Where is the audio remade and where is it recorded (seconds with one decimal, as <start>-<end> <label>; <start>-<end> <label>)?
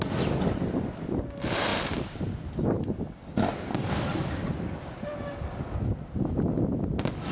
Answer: 0.0-7.3 recorded